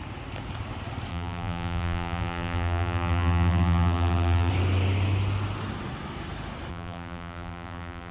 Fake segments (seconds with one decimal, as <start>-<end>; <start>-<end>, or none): 1.1-4.5; 6.7-8.1